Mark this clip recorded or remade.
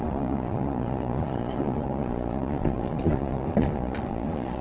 remade